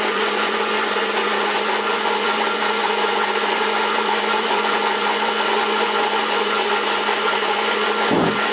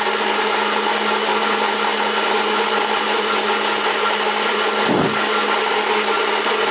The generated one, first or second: first